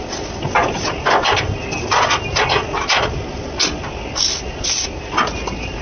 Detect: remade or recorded recorded